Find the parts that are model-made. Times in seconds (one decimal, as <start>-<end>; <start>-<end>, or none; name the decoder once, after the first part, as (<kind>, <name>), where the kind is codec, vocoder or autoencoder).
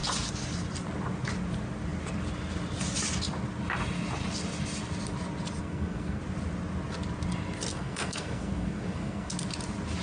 5.6-6.2 (codec, SNAC); 7.7-9.3